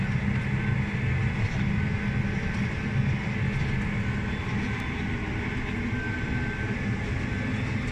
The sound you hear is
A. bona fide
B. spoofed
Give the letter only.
A